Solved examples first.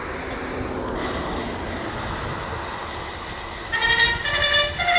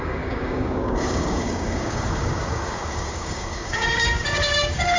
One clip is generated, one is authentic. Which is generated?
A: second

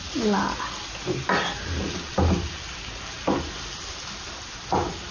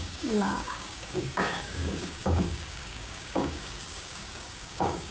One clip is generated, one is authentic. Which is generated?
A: second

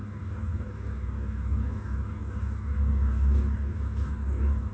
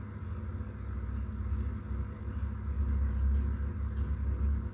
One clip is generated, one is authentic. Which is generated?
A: first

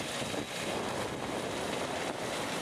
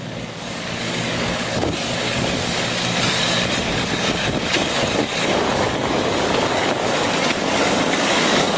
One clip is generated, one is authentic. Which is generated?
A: second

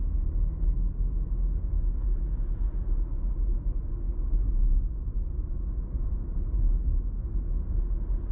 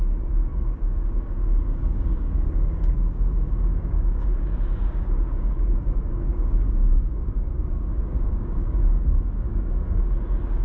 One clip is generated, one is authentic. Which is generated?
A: second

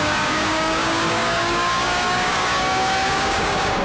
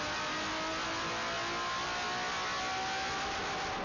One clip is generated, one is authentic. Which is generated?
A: first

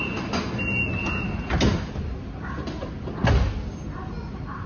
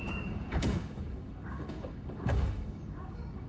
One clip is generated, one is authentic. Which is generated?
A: second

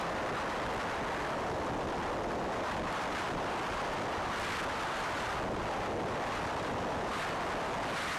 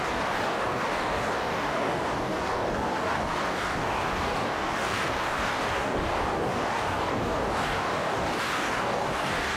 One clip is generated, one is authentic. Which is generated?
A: second